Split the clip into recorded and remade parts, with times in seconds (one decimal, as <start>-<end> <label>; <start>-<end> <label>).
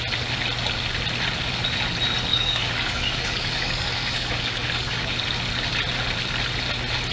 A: 0.0-2.3 recorded; 2.3-5.1 remade; 5.1-7.1 recorded